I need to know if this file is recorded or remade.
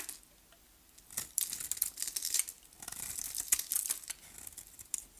recorded